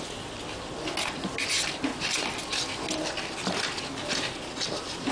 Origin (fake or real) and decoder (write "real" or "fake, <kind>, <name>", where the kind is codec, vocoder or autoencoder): real